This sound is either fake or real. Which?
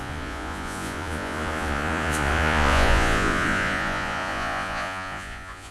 fake